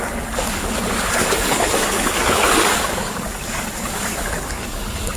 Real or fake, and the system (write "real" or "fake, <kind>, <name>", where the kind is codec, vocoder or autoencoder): fake, codec, DAC